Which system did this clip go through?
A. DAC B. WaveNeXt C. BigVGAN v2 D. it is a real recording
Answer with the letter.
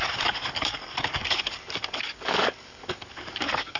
A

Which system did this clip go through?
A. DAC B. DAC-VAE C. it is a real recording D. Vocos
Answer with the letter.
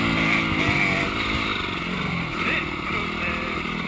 C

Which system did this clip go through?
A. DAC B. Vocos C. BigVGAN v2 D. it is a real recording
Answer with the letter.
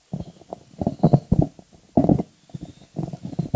D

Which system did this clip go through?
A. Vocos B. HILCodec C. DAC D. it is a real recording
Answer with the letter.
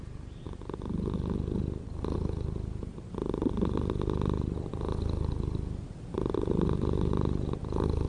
D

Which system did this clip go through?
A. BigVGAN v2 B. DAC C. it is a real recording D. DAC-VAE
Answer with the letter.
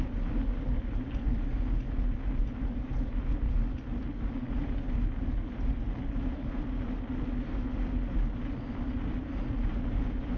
C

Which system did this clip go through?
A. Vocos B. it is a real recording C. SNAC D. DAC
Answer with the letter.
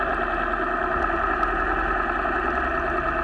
B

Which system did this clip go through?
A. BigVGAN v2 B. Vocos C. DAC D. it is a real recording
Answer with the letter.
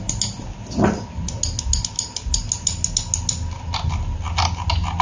D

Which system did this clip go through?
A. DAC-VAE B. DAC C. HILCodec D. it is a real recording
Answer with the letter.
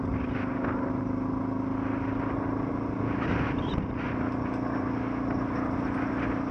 D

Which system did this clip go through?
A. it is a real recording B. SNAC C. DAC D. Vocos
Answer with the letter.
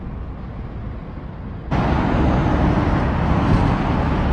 A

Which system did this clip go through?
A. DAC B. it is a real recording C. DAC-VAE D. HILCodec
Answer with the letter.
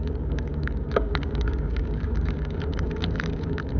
A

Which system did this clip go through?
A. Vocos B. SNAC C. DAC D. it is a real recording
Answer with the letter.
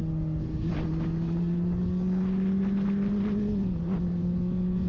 D